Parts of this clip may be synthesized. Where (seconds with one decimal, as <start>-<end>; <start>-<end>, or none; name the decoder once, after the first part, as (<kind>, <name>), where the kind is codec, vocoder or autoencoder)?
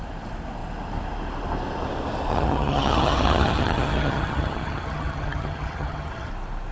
2.3-6.3 (vocoder, HiFi-GAN)